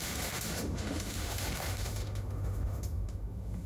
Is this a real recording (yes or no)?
no